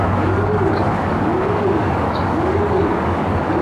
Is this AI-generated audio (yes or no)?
yes